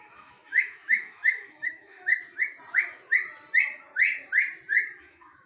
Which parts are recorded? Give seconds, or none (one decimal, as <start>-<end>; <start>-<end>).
2.1-5.0